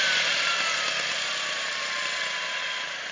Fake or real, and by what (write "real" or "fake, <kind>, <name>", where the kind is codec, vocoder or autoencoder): real